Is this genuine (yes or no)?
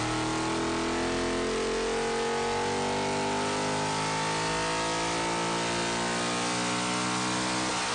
yes